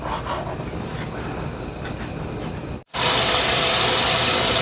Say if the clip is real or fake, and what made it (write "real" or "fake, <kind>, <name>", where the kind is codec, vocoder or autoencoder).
real